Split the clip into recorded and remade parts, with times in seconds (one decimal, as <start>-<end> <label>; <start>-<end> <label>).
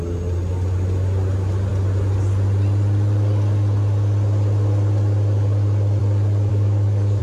0.0-6.5 recorded; 6.5-7.2 remade